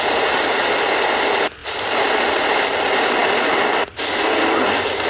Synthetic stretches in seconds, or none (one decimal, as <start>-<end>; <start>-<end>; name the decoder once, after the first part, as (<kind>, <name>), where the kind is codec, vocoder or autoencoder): none